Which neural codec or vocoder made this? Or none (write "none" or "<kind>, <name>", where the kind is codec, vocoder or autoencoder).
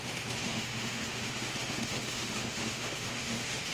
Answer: autoencoder, DAC-VAE